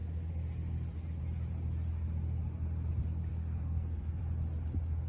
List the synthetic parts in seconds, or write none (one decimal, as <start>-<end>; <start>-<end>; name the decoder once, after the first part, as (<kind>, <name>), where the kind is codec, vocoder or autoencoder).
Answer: 3.3-4.2 (codec, SNAC)